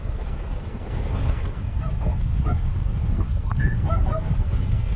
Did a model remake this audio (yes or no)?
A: yes